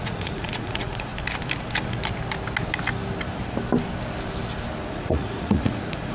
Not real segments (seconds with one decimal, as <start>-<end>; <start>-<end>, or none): 0.0-1.1; 4.8-6.1